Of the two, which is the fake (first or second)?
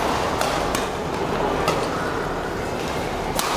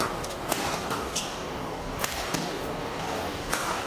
second